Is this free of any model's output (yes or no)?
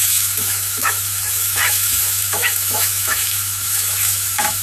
no